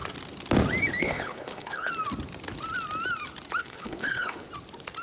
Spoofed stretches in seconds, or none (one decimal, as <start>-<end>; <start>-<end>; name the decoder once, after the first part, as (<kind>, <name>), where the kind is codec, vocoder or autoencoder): 1.0-1.9 (codec, HILCodec); 3.6-4.5